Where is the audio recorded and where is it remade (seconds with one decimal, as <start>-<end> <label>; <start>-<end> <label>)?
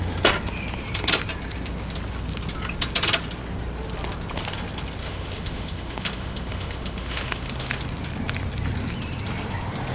0.0-5.0 recorded; 5.0-7.8 remade; 7.8-9.9 recorded